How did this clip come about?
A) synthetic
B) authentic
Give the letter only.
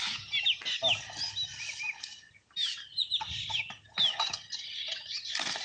B